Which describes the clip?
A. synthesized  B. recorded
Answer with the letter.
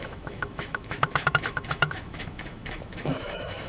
A